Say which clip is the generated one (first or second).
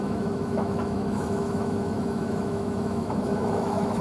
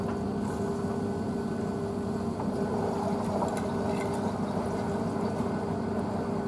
first